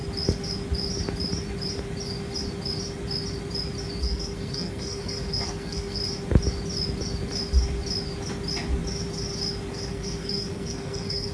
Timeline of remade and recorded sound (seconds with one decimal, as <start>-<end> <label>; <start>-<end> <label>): 0.0-4.0 recorded; 4.0-6.0 remade; 6.0-9.7 recorded; 9.7-11.3 remade